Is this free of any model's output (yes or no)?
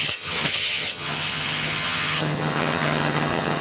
no